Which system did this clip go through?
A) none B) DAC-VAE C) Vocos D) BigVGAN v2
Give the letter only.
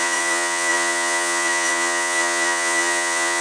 C